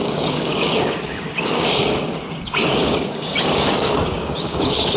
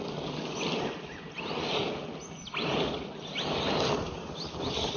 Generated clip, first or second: first